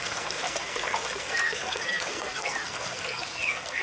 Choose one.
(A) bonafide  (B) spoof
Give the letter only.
B